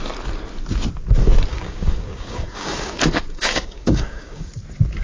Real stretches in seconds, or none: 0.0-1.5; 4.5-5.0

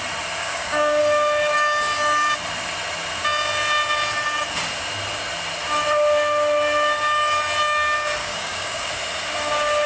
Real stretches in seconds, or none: 0.0-0.4; 1.0-8.2; 8.9-9.9

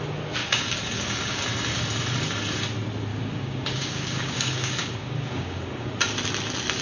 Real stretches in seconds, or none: 0.0-0.4; 1.4-3.1; 5.9-6.8